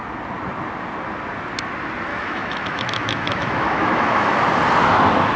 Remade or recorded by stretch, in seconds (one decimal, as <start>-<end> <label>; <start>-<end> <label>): 0.0-2.1 recorded; 2.1-4.4 remade; 4.4-5.4 recorded